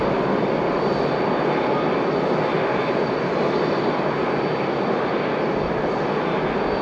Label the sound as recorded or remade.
recorded